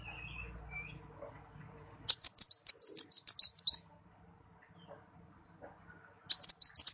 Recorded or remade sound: recorded